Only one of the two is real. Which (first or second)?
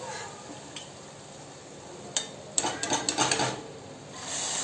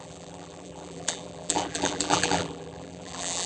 first